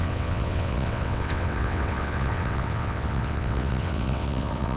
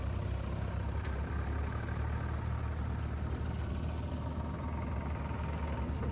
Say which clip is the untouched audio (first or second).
second